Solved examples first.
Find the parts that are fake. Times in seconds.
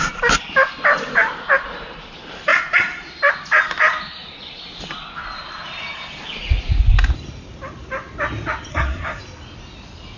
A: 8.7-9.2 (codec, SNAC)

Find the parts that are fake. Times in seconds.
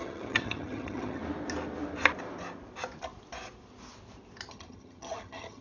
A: 0.0-1.2 (vocoder, HiFi-GAN); 4.5-5.6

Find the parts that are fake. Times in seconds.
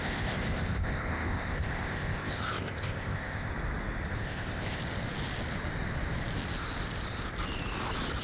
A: 0.0-3.5 (codec, ZipCodec); 4.2-4.8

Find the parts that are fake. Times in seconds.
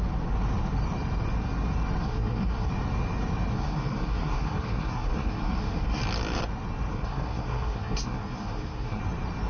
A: 2.0-2.7 (codec, SNAC); 3.5-6.0; 6.9-9.0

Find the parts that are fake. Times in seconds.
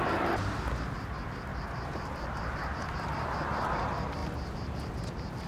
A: 1.5-3.1 (vocoder, BigVGAN v2)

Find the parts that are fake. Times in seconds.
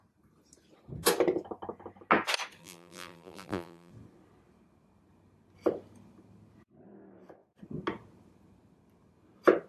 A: 2.6-3.9 (vocoder, BigVGAN v2)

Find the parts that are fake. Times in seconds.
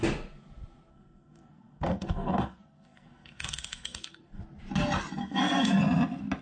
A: 0.9-4.4 (codec, SNAC); 5.2-5.8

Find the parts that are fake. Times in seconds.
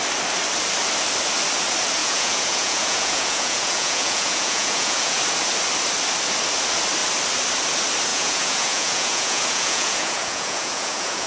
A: 2.0-5.2 (vocoder, Vocos); 8.1-11.3